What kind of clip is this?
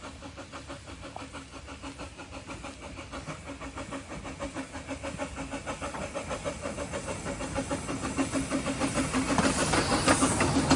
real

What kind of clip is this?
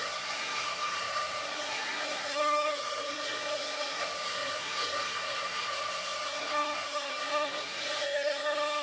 fake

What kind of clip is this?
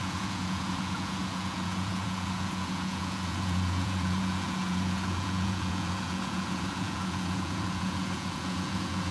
fake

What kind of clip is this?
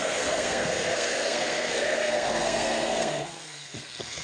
fake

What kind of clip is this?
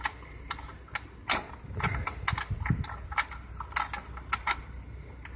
real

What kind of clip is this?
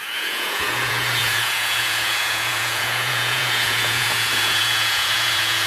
fake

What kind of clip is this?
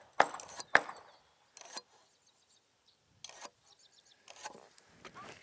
real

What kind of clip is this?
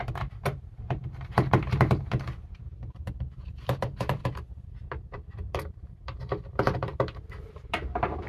fake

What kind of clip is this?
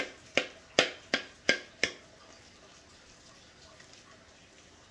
real